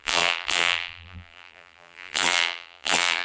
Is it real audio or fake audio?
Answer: fake